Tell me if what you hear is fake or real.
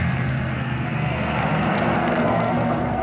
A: fake